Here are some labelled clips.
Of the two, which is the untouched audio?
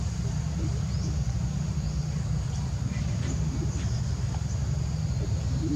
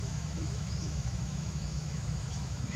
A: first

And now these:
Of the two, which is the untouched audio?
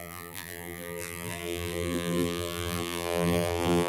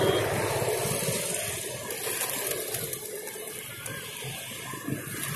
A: second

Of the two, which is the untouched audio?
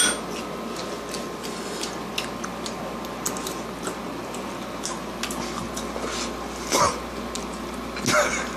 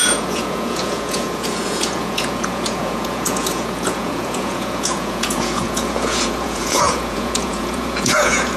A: first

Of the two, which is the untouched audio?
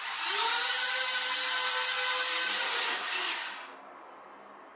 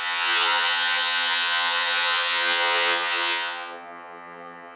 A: first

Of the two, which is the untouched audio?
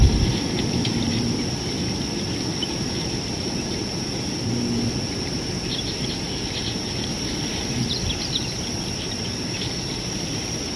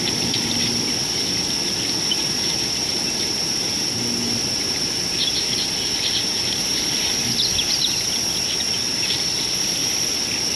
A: second